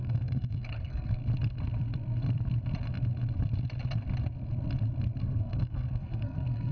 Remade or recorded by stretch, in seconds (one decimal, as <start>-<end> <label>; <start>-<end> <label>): 0.0-1.2 remade; 1.2-5.2 recorded; 5.2-6.7 remade